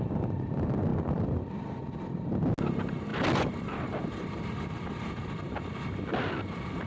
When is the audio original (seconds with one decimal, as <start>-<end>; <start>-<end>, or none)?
0.0-3.1; 5.1-6.9

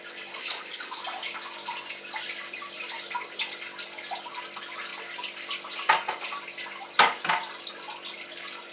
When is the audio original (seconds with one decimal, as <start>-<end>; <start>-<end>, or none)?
0.0-0.4; 1.0-8.7